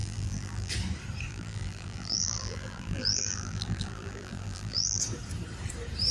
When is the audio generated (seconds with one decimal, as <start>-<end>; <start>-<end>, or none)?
0.0-0.7; 1.3-5.0